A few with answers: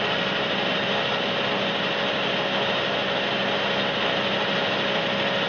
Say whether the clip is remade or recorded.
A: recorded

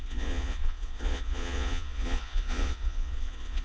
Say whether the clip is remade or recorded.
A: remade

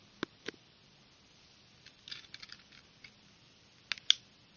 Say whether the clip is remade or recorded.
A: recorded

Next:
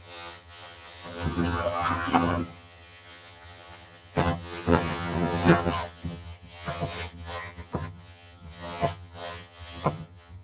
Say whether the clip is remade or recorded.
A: remade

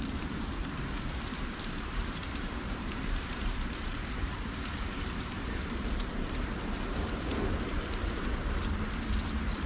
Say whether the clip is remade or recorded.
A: remade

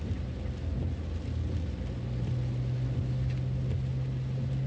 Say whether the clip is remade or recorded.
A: recorded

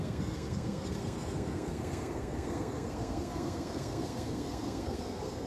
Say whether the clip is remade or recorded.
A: remade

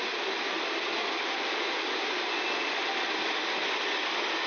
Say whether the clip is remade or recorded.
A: recorded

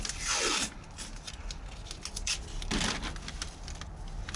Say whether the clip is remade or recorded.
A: recorded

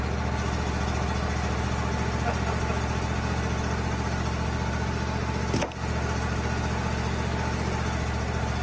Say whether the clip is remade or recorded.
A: recorded